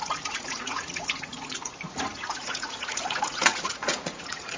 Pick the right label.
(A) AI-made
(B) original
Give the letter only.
A